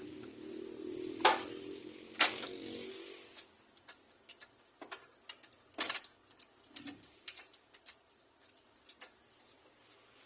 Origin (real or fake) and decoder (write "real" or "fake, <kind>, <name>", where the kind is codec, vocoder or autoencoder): real